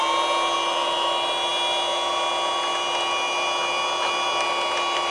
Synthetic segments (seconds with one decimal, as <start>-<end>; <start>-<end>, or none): none